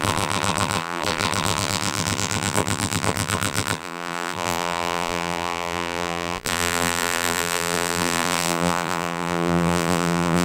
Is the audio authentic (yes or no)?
no